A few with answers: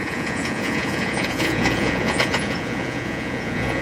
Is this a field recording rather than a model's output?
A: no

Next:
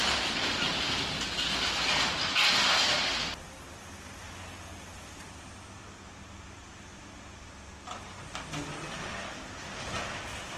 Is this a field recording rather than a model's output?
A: yes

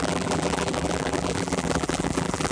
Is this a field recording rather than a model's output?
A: no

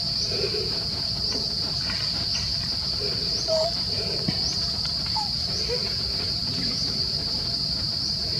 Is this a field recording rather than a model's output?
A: yes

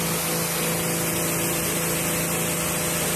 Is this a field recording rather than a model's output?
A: yes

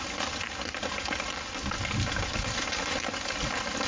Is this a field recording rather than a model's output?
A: yes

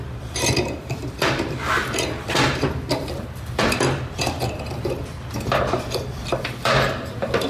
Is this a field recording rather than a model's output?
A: no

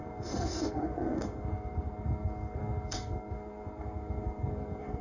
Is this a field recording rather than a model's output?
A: no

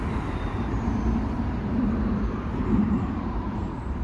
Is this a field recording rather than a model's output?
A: no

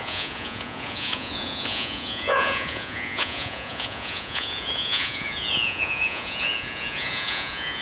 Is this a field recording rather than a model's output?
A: no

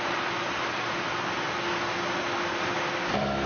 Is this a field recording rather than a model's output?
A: yes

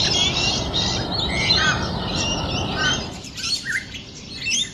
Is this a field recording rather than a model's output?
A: yes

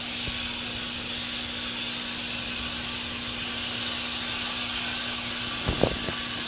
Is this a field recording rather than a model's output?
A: yes